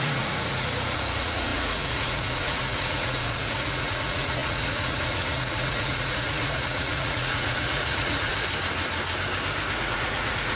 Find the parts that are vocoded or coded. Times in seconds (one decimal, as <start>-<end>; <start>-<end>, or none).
0.0-8.3; 9.8-10.6